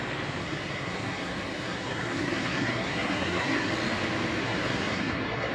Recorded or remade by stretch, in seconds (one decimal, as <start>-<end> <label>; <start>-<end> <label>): 0.0-0.4 recorded; 0.4-3.7 remade; 3.7-4.4 recorded; 4.4-5.5 remade